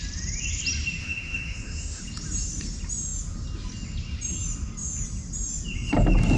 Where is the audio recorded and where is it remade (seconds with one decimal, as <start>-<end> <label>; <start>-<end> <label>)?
0.0-1.0 recorded; 1.0-2.0 remade; 2.0-6.4 recorded